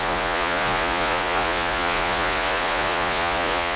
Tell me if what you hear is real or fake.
fake